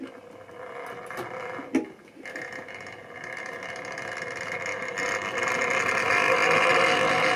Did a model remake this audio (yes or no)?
no